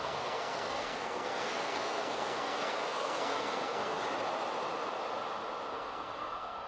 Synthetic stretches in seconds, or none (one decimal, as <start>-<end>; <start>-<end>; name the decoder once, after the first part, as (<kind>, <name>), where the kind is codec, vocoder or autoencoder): 0.0-4.0 (codec, SNAC); 5.7-6.7